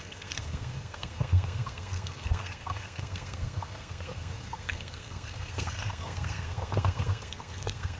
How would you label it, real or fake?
fake